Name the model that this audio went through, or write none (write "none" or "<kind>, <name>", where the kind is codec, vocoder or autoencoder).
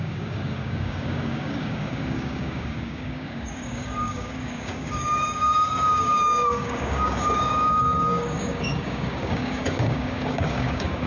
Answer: codec, DAC